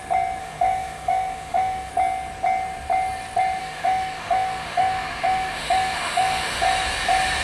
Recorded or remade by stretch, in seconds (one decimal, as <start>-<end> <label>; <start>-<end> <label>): 0.0-0.4 recorded; 0.4-1.9 remade; 1.9-3.6 recorded; 3.6-6.6 remade; 6.6-7.4 recorded